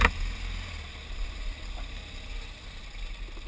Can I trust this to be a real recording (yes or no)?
yes